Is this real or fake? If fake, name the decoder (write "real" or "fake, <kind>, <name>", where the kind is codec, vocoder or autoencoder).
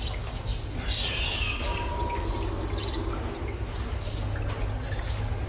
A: real